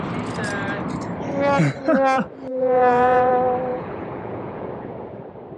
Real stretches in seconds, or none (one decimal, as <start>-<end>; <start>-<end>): 0.0-2.5; 3.3-3.7; 4.7-5.6